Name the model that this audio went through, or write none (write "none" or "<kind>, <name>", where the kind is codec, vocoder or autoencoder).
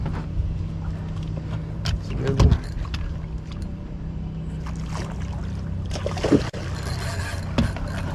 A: none